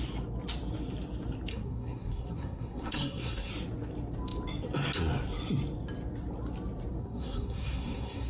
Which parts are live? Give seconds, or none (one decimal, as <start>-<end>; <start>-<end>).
0.0-1.5; 3.5-7.0